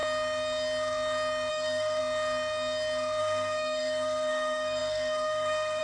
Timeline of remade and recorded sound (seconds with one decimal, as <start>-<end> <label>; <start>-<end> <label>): 0.0-1.5 recorded; 1.5-2.0 remade; 2.0-3.2 recorded; 3.2-5.8 remade

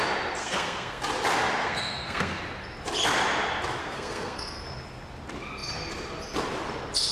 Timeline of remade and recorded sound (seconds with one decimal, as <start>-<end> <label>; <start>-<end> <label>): 0.0-0.4 recorded; 0.4-1.0 remade; 1.0-1.6 recorded; 1.6-2.4 remade; 2.4-3.8 recorded; 3.8-4.6 remade; 4.6-7.1 recorded

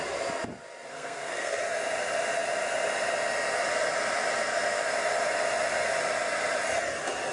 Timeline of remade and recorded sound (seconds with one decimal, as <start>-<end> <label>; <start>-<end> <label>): 0.0-0.9 recorded; 0.9-1.6 remade; 1.6-7.3 recorded

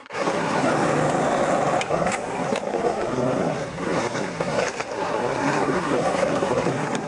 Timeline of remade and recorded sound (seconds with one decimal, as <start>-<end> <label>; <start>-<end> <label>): 0.0-0.7 remade; 0.7-1.8 recorded; 1.8-7.1 remade

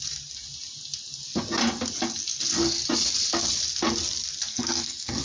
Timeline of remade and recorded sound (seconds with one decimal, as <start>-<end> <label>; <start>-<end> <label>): 0.0-4.5 recorded; 4.5-5.2 remade

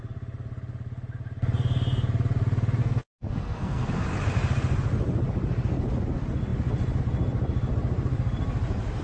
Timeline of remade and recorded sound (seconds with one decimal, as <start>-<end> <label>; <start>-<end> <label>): 0.0-2.8 recorded; 2.8-3.9 remade; 3.9-9.0 recorded

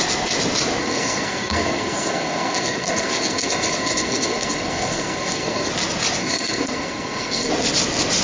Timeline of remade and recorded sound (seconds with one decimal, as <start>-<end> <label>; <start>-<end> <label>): 0.0-0.8 recorded; 0.8-5.7 remade; 5.7-6.2 recorded; 6.2-7.5 remade; 7.5-8.2 recorded